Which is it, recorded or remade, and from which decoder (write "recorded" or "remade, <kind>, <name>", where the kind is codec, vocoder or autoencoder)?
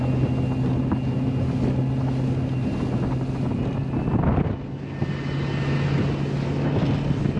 recorded